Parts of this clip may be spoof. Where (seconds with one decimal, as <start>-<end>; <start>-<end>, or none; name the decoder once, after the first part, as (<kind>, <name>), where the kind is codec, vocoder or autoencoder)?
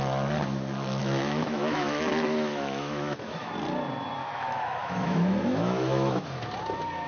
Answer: 1.0-3.5 (autoencoder, DAC-VAE); 4.2-6.2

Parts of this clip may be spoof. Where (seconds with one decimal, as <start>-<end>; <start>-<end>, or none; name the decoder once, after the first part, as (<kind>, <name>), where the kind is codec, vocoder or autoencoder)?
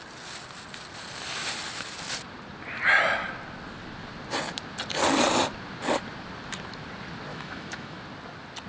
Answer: 7.3-8.0 (autoencoder, DAC-VAE)